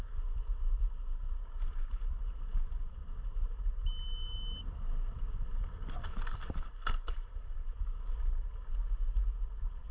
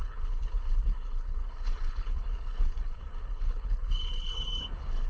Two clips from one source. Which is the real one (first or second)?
first